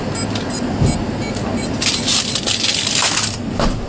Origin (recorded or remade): recorded